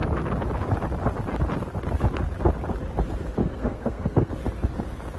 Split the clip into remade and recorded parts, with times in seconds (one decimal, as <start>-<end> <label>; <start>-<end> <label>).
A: 0.0-3.4 recorded; 3.4-4.3 remade; 4.3-5.2 recorded